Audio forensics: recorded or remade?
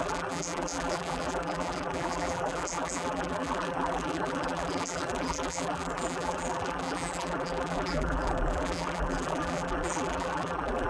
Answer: remade